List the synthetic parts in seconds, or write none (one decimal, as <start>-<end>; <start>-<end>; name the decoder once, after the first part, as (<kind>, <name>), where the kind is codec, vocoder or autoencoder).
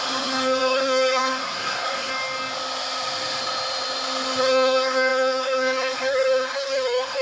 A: 0.0-2.1 (codec, SNAC); 4.4-7.2